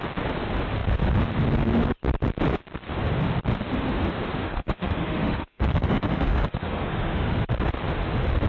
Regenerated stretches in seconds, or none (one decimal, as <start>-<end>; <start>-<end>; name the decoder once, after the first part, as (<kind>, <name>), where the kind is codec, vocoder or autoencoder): 4.4-7.3 (autoencoder, DAC-VAE)